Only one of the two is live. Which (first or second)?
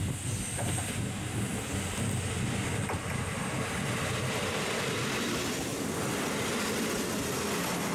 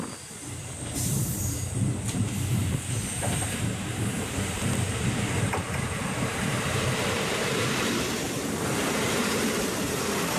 first